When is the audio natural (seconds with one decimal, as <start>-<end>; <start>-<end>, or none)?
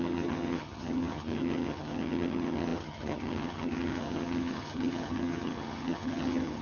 none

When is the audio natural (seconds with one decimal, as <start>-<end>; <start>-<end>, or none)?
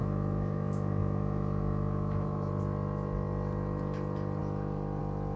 2.5-5.4